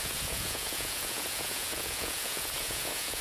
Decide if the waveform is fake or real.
fake